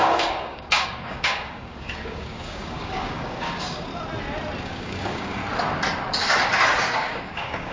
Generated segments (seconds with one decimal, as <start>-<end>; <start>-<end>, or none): 0.0-3.9; 4.6-5.4; 6.8-7.7